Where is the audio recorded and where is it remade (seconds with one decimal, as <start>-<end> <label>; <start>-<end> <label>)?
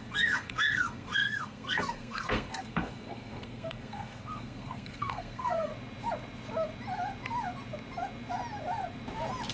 0.0-5.7 remade; 5.7-9.5 recorded